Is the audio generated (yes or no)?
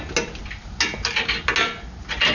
no